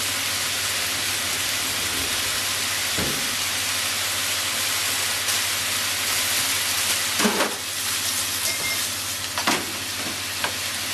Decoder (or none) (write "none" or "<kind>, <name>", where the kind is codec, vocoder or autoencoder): none